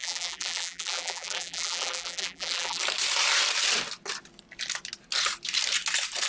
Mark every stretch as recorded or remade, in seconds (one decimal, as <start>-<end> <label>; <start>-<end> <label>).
0.0-2.8 remade; 2.8-6.3 recorded